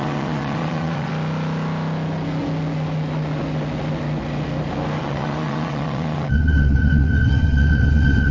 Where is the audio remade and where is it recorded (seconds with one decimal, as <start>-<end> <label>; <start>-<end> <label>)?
0.0-1.1 remade; 1.1-5.0 recorded; 5.0-8.3 remade